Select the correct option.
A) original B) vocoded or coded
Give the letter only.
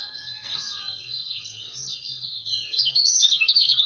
B